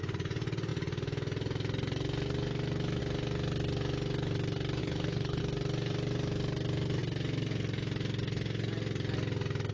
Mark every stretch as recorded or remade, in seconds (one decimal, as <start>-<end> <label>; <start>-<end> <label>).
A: 0.0-4.8 recorded; 4.8-5.4 remade; 5.4-9.7 recorded